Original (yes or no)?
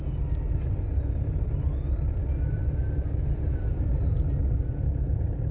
yes